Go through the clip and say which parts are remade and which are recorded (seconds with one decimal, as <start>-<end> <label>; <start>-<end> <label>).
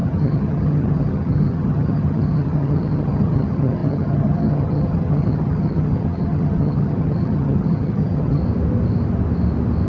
0.0-8.4 remade; 8.4-9.9 recorded